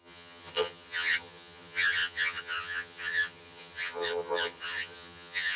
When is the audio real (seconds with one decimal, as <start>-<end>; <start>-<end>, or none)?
none